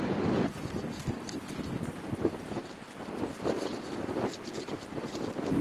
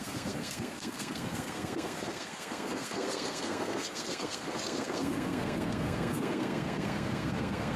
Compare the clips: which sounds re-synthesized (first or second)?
second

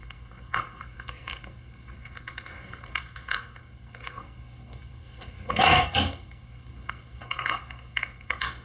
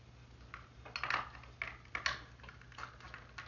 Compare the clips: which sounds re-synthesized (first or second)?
first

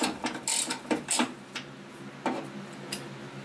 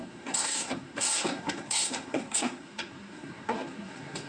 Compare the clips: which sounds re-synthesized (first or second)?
second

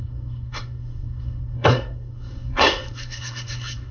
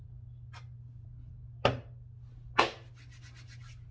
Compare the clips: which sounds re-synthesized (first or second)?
first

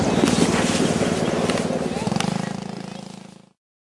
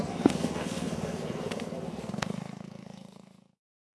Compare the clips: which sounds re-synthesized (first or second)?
second